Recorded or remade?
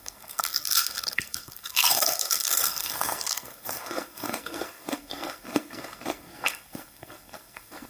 remade